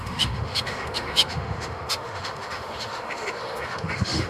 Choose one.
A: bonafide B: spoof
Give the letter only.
B